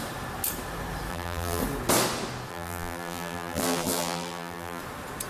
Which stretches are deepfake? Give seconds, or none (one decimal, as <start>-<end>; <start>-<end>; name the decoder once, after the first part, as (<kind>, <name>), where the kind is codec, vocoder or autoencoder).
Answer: 1.1-1.6 (vocoder, BigVGAN v2); 2.5-4.8